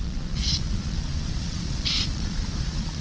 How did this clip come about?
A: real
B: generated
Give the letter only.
B